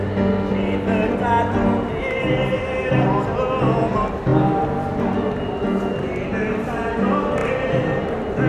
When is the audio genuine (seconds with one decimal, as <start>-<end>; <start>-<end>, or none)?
0.0-8.5